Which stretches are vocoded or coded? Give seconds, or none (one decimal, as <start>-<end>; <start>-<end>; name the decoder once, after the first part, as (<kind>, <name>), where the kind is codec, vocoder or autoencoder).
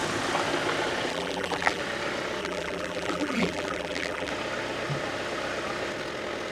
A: 1.1-1.8 (vocoder, BigVGAN v2); 2.4-4.3